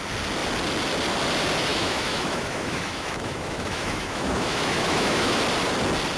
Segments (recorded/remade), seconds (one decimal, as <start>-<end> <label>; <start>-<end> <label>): 0.0-1.7 recorded; 1.7-5.4 remade; 5.4-6.2 recorded